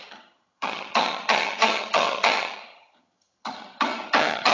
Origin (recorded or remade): remade